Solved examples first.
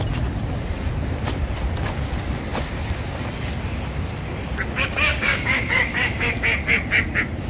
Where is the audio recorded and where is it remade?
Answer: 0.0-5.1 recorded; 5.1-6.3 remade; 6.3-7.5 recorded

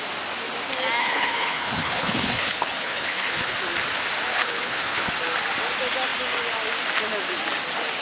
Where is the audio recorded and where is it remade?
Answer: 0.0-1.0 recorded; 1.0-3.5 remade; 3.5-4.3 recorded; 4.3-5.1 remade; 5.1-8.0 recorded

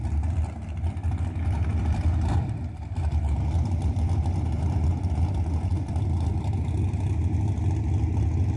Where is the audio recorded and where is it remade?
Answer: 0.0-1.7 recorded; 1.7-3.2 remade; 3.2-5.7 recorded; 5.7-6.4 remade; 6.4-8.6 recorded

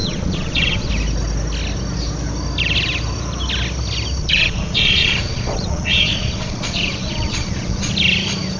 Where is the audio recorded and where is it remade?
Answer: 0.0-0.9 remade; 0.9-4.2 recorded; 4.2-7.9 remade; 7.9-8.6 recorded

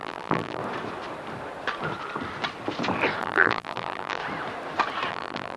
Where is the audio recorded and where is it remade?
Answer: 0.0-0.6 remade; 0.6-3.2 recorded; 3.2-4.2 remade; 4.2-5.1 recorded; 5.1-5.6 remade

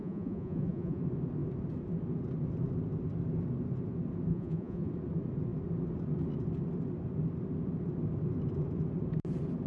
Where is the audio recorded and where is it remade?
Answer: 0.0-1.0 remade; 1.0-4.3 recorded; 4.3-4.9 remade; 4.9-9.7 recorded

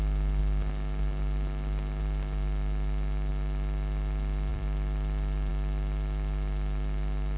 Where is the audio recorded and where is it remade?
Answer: 0.0-4.5 recorded; 4.5-5.5 remade; 5.5-7.4 recorded

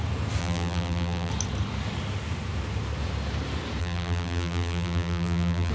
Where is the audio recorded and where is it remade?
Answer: 0.0-0.4 recorded; 0.4-1.3 remade; 1.3-3.8 recorded; 3.8-5.7 remade